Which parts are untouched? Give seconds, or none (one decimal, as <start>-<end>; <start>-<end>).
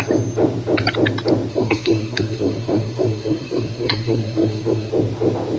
0.0-1.5; 4.9-5.6